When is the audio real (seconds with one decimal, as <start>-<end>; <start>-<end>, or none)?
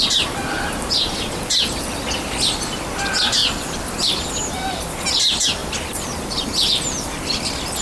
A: 0.0-3.4; 4.3-7.8